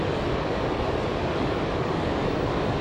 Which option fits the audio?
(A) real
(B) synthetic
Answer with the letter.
B